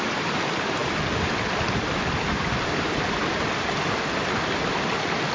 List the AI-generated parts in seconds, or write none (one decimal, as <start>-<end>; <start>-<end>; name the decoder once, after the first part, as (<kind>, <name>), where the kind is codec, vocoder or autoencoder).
none